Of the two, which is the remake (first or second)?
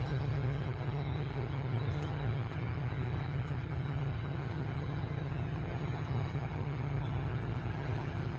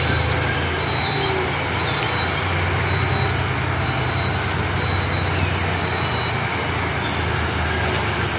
first